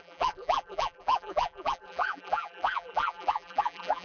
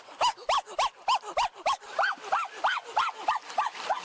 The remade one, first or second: first